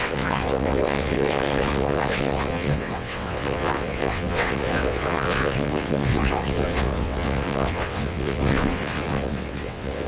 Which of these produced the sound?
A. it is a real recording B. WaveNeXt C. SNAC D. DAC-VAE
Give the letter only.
B